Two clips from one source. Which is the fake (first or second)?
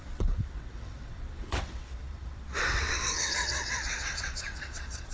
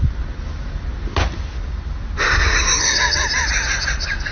first